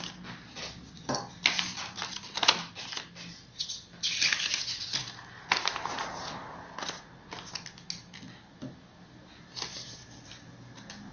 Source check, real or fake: real